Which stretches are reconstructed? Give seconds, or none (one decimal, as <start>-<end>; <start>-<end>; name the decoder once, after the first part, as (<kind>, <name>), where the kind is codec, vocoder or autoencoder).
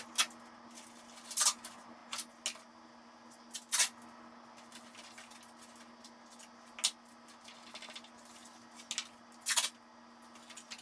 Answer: none